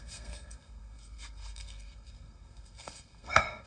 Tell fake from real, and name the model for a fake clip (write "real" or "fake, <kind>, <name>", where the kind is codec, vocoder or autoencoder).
fake, codec, SNAC